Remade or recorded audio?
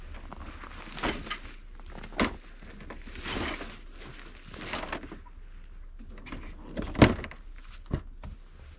recorded